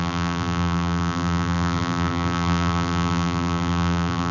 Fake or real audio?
fake